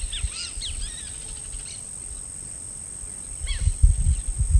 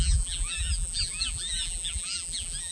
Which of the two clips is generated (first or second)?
second